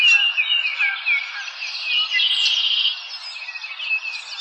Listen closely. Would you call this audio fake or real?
real